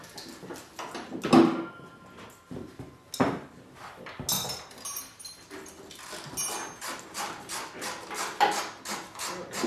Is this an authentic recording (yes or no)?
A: yes